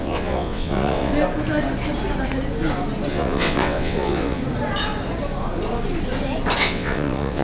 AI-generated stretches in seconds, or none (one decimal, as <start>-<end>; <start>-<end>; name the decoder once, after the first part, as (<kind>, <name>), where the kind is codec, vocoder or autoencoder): 0.0-1.1 (vocoder, WaveNeXt); 3.1-4.4; 6.6-7.4